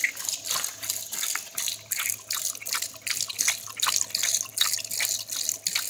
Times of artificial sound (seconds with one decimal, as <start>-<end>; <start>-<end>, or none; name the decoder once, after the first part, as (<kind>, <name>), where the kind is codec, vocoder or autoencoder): none